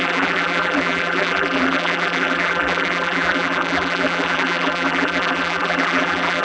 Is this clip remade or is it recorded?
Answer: remade